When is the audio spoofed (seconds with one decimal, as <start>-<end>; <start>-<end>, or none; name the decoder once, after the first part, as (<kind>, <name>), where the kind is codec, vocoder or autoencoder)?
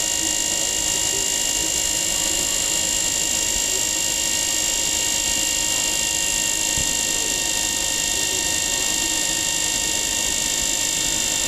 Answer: none